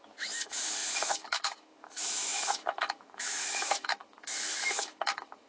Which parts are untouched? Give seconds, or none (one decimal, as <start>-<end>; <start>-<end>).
none